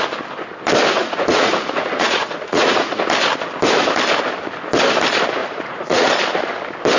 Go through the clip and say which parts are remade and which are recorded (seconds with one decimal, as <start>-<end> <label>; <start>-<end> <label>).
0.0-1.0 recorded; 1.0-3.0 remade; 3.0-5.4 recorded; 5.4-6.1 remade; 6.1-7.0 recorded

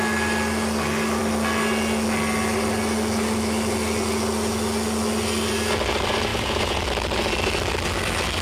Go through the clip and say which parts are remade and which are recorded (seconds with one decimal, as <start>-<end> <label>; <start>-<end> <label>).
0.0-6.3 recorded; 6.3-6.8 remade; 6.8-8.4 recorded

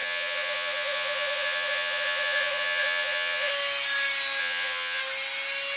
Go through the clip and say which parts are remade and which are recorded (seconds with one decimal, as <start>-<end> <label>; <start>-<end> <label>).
0.0-3.5 remade; 3.5-4.4 recorded; 4.4-5.0 remade; 5.0-5.8 recorded